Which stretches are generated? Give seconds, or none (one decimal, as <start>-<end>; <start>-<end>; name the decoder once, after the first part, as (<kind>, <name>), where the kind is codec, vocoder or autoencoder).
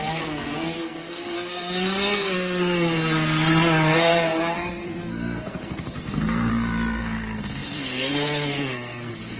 0.0-6.5 (codec, SNAC); 7.0-9.4